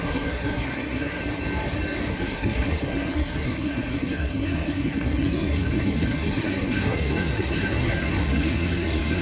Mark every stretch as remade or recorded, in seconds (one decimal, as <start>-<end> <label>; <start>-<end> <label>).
0.0-1.2 remade; 1.2-2.1 recorded; 2.1-9.2 remade